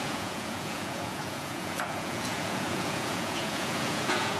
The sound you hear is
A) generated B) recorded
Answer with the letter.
A